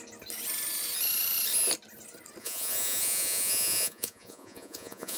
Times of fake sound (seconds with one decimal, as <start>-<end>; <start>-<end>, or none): 2.4-5.2